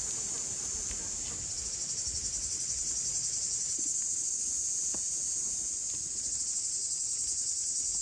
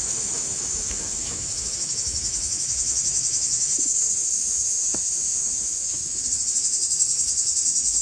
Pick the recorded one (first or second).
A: first